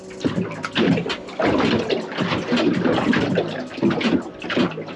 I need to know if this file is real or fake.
real